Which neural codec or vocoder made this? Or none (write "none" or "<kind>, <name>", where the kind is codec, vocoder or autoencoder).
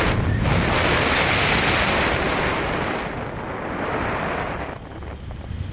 none